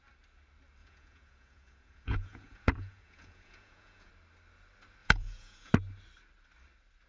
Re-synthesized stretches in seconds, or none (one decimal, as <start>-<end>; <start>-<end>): 0.8-4.1; 5.0-5.7